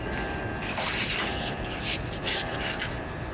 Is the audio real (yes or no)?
yes